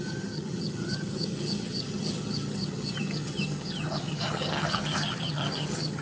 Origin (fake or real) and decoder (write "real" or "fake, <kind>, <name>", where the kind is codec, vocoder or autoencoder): fake, vocoder, HiFi-GAN